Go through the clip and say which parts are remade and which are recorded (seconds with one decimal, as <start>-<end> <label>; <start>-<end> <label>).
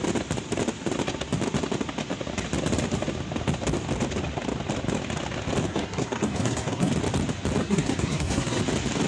0.0-5.7 recorded; 5.7-6.9 remade; 6.9-7.6 recorded; 7.6-8.6 remade; 8.6-9.1 recorded